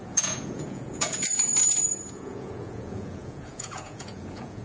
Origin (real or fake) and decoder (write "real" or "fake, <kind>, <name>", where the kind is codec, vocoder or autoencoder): fake, vocoder, Vocos